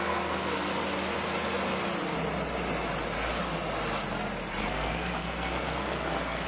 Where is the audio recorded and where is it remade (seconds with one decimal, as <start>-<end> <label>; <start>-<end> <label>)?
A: 0.0-0.7 remade; 0.7-4.6 recorded; 4.6-6.5 remade